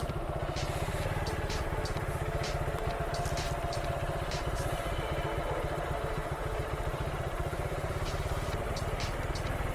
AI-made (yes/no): yes